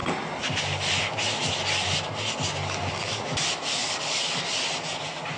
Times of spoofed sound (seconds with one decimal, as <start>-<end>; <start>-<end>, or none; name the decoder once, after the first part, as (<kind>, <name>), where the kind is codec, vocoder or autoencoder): none